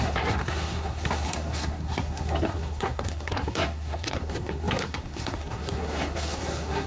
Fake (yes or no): yes